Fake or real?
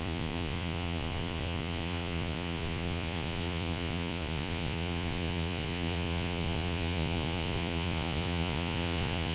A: fake